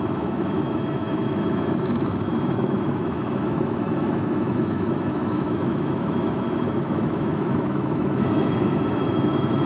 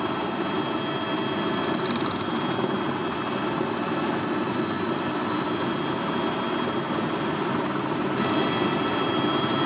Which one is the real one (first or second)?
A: second